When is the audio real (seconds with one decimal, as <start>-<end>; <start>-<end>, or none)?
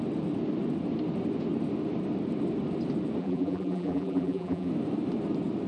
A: 0.0-3.2; 4.7-5.7